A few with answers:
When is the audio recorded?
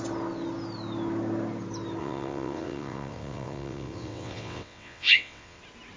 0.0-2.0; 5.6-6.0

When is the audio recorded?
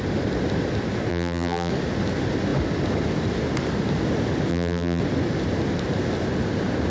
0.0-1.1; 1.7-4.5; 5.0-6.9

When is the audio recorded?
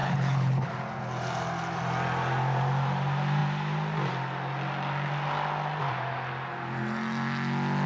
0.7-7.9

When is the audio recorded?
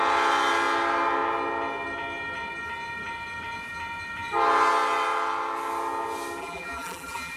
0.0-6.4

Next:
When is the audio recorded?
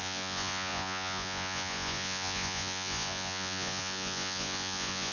none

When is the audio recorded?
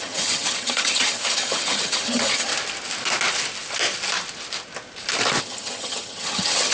2.5-5.4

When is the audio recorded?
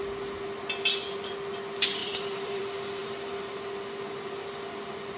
0.0-2.0; 2.6-5.2